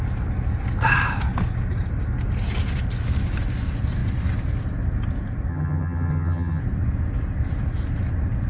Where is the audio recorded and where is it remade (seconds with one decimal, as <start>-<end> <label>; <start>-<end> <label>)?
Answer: 0.0-5.5 recorded; 5.5-6.6 remade; 6.6-8.5 recorded